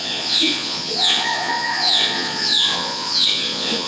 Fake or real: fake